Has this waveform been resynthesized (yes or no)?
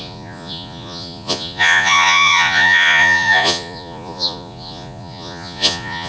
yes